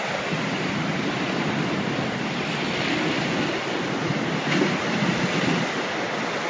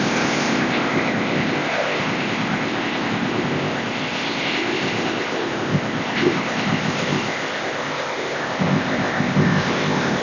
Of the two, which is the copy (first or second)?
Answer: second